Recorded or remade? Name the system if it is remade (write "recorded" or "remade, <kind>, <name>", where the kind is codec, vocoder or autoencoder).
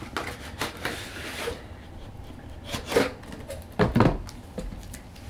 recorded